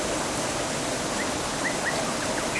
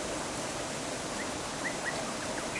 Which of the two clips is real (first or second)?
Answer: first